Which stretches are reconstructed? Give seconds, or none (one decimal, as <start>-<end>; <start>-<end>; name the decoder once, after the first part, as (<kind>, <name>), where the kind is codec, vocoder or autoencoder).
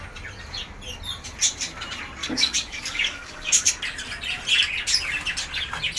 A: 2.2-3.7 (codec, DAC)